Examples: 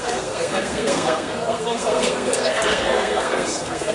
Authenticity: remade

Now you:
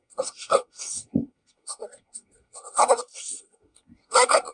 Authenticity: remade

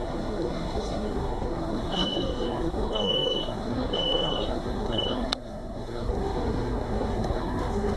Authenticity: remade